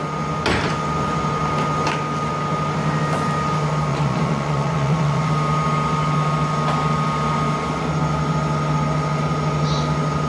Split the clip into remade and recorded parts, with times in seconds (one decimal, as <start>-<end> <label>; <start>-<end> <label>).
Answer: 0.0-3.9 recorded; 3.9-5.3 remade; 5.3-10.3 recorded